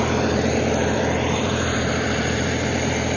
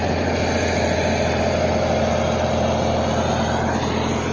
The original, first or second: second